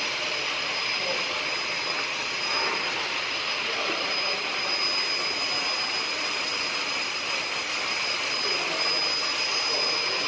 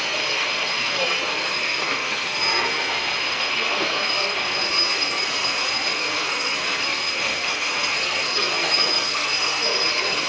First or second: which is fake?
second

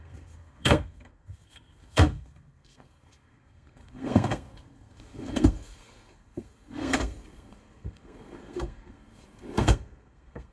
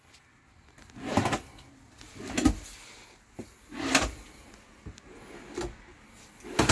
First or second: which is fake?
first